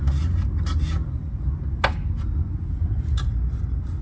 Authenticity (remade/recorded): recorded